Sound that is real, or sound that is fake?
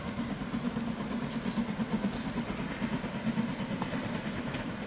real